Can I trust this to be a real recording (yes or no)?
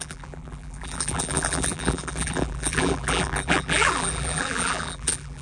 no